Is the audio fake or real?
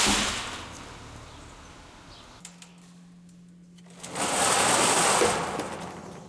real